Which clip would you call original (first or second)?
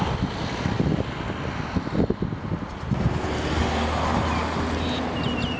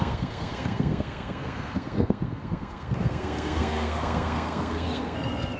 first